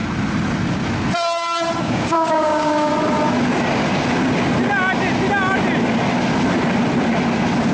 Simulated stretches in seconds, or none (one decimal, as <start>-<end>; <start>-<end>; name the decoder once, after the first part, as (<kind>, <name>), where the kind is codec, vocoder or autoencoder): 1.8-2.9 (codec, DAC)